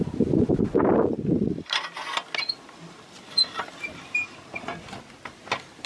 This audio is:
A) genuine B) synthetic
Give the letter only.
A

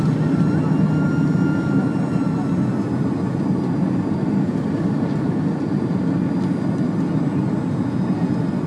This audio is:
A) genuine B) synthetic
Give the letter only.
A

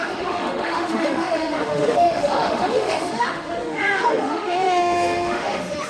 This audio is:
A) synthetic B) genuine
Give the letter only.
A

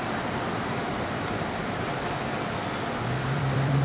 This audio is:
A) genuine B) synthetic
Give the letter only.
B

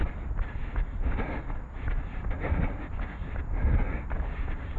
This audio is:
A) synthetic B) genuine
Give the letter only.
B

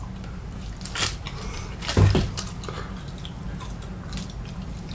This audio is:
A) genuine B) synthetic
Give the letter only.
A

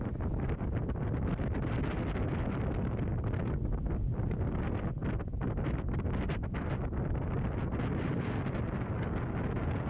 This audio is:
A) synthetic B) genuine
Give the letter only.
B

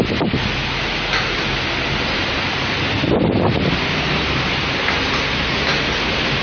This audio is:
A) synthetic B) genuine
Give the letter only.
B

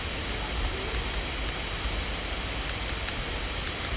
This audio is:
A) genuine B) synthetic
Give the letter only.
A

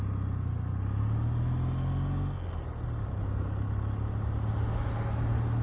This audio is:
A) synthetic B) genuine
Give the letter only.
B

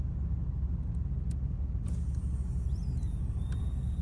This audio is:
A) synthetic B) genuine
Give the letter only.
B